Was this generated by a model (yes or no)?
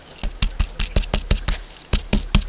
no